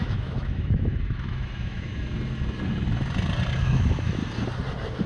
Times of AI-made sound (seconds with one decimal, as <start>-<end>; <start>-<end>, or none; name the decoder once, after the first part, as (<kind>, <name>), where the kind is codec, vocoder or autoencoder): 0.0-1.9 (autoencoder, DAC-VAE); 3.6-4.2